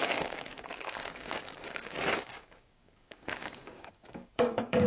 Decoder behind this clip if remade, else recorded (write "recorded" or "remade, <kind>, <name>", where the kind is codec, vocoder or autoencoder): remade, codec, DAC